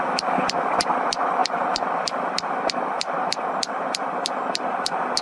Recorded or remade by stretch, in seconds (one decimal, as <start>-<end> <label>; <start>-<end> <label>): 0.0-5.2 recorded